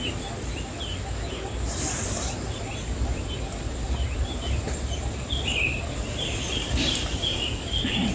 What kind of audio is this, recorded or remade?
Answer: recorded